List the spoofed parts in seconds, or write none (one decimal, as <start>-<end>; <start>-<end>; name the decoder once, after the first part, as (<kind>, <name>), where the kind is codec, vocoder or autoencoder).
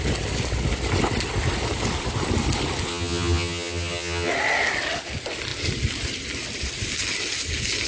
2.9-4.3 (vocoder, HiFi-GAN)